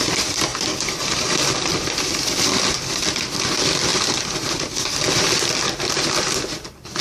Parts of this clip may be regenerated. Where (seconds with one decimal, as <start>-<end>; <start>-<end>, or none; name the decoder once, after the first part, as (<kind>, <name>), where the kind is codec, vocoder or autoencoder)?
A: none